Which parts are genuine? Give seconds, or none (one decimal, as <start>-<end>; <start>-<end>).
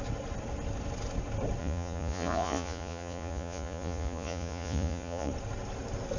0.0-1.6; 5.3-6.2